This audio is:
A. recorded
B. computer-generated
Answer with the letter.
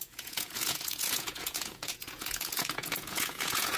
B